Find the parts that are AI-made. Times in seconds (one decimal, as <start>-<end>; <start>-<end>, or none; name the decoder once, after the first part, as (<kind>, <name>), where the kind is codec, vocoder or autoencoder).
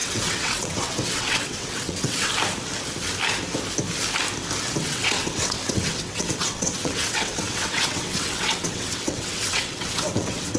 0.0-2.3 (vocoder, WaveNeXt); 4.8-10.6